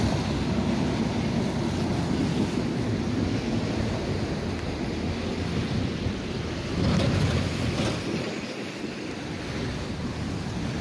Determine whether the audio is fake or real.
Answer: real